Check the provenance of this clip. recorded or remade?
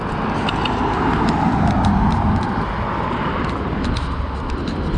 recorded